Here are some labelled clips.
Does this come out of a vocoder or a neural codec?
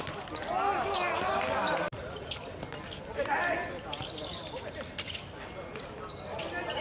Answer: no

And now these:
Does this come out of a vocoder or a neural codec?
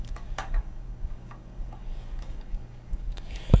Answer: yes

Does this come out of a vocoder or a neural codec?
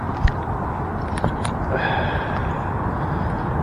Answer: no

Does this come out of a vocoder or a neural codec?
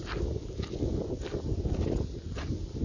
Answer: no